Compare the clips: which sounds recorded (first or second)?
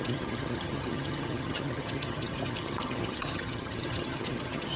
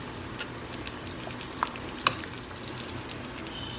second